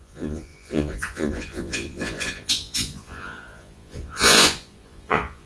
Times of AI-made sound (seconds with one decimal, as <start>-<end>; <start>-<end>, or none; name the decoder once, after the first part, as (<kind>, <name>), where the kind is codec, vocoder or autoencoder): 0.0-5.5 (vocoder, Vocos)